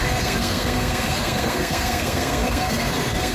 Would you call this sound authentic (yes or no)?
no